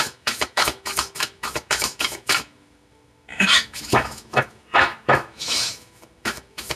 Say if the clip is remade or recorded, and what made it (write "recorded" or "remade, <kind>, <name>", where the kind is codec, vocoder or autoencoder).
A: remade, autoencoder, DAC-VAE